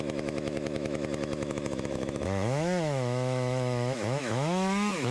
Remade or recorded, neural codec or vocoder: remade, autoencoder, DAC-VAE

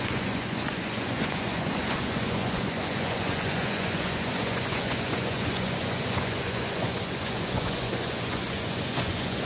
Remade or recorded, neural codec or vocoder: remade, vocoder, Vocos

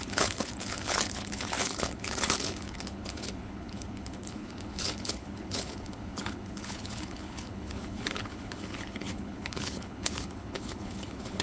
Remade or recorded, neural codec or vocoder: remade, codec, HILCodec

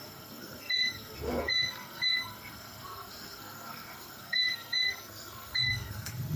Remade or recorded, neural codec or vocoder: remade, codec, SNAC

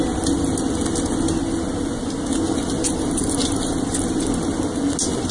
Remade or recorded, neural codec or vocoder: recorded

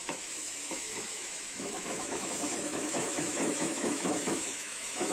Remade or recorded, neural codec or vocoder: remade, autoencoder, DAC-VAE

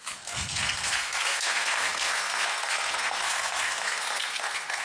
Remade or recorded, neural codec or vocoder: remade, codec, SNAC